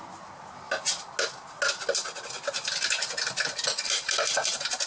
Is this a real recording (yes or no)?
yes